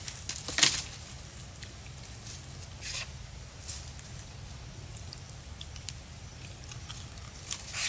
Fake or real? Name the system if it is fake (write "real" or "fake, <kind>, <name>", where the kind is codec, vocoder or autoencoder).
real